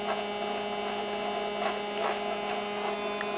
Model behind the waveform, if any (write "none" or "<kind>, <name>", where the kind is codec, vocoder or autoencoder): none